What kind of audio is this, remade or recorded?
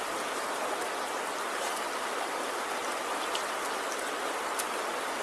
remade